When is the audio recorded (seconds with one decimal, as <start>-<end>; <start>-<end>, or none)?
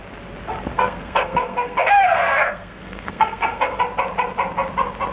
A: 0.0-0.7; 3.8-5.1